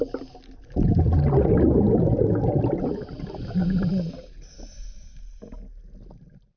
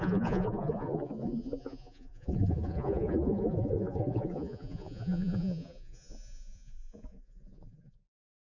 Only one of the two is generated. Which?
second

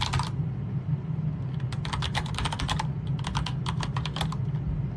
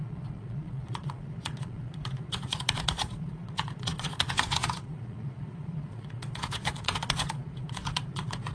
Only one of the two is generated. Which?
second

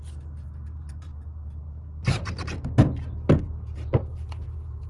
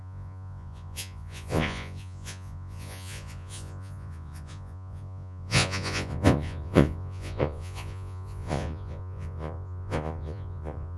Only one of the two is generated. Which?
second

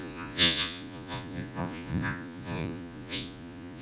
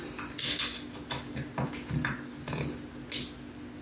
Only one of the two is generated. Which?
first